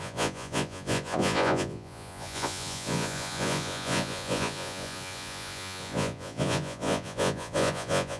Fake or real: fake